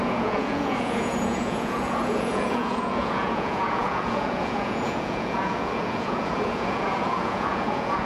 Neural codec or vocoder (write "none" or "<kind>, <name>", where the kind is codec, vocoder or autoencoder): vocoder, Vocos